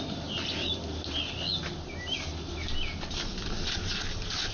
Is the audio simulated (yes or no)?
no